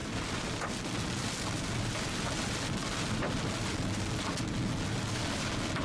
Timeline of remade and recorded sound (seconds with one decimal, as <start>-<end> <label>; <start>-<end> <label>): 0.0-1.7 remade; 1.7-2.8 recorded; 2.8-3.5 remade; 3.5-5.8 recorded